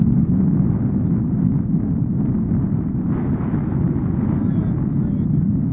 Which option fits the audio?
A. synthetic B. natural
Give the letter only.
B